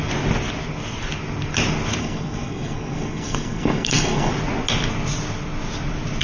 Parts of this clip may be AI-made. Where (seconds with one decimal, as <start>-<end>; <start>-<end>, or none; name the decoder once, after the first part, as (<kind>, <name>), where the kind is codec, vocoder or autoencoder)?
2.0-4.3 (codec, SNAC)